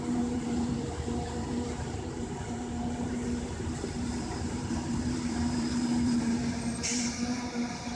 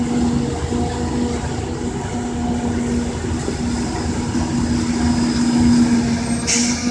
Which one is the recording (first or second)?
second